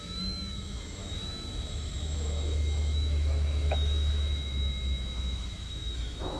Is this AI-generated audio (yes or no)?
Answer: yes